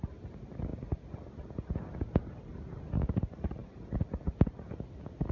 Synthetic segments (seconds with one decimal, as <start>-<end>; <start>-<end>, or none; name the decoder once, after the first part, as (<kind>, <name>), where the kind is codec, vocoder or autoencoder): none